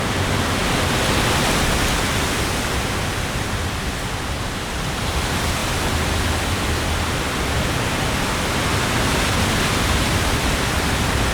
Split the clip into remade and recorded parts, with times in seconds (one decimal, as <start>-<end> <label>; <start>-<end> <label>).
0.0-11.3 recorded